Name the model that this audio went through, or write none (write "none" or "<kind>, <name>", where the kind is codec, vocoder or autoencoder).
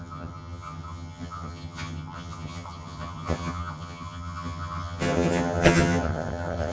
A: vocoder, HiFi-GAN